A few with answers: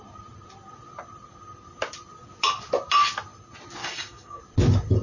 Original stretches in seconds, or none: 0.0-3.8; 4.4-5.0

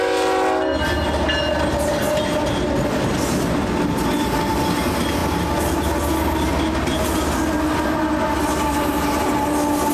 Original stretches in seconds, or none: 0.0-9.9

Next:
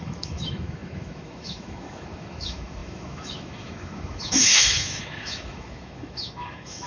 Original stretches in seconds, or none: none